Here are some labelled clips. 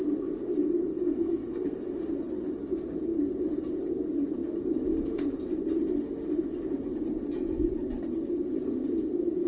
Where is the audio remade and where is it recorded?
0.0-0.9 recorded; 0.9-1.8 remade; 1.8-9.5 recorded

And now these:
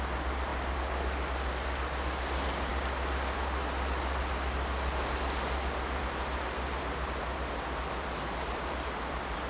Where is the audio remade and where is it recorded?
0.0-9.5 recorded

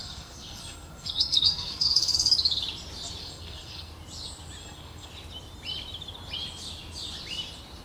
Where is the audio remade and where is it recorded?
0.0-2.3 remade; 2.3-3.2 recorded; 3.2-3.9 remade; 3.9-4.6 recorded; 4.6-5.1 remade; 5.1-7.8 recorded

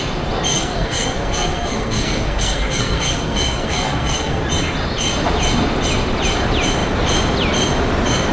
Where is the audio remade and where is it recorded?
0.0-0.5 recorded; 0.5-4.4 remade; 4.4-8.3 recorded

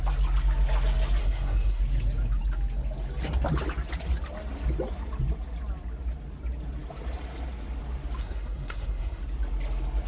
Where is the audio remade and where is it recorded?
0.0-1.2 recorded; 1.2-1.8 remade; 1.8-8.2 recorded; 8.2-9.2 remade; 9.2-10.1 recorded

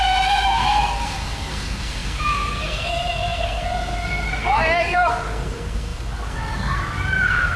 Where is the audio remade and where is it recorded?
0.0-7.6 remade

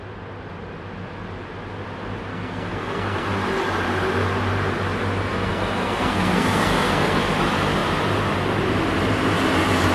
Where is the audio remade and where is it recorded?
0.0-2.3 recorded; 2.3-3.3 remade; 3.3-5.3 recorded; 5.3-7.3 remade; 7.3-9.9 recorded